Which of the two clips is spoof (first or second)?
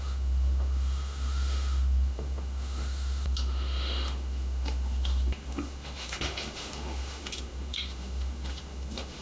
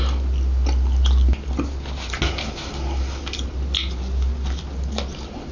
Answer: first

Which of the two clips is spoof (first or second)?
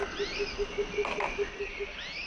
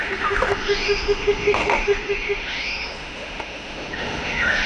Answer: second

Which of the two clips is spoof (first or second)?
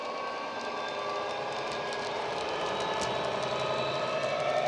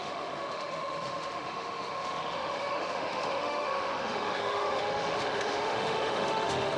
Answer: second